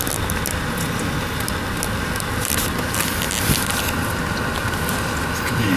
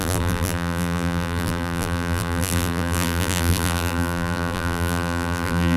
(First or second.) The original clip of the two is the first